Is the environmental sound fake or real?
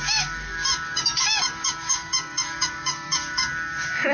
fake